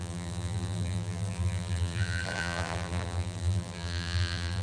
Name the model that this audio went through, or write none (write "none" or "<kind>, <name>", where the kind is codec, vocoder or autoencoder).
vocoder, BigVGAN v2